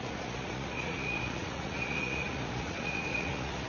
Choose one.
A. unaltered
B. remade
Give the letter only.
B